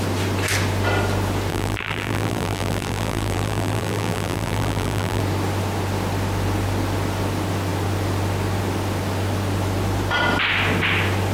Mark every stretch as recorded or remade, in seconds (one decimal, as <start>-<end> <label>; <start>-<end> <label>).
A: 0.0-1.5 recorded; 1.5-5.2 remade; 5.2-11.3 recorded